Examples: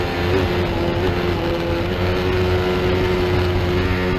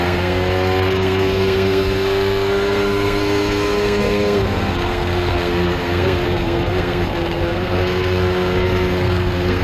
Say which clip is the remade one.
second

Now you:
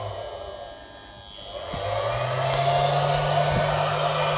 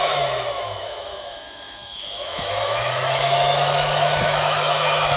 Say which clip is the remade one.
second